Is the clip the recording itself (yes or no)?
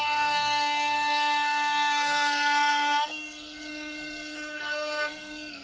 no